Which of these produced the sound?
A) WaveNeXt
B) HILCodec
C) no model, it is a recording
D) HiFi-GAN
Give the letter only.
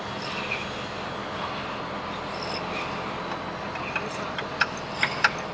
C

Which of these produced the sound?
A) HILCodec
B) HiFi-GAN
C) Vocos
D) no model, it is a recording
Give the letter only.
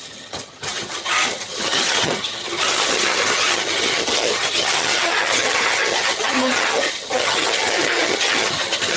B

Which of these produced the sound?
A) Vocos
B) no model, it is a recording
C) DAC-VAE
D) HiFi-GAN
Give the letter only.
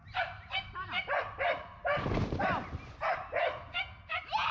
B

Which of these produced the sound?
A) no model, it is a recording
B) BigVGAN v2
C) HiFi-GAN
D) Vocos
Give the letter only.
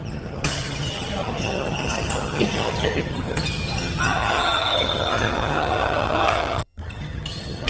C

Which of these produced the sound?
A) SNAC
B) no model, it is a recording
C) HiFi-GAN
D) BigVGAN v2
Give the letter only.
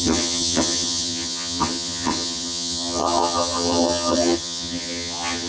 C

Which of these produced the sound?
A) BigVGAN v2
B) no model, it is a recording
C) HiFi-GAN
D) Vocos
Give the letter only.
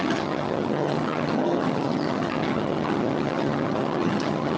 C